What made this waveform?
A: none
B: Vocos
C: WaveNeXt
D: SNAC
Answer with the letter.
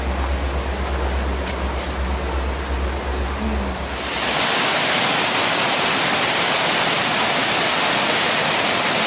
A